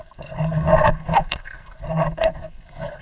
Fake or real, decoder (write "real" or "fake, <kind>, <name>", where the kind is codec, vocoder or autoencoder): fake, codec, SNAC